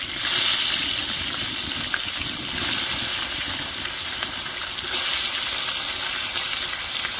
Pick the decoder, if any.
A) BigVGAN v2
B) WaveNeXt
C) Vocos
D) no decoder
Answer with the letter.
D